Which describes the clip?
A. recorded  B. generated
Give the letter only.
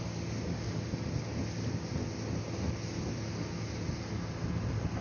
A